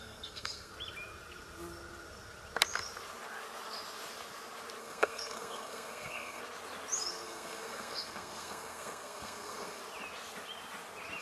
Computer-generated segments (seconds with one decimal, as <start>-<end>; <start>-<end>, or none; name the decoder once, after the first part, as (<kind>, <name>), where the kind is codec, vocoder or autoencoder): 0.0-0.7 (codec, SNAC); 4.8-6.4; 7.1-9.8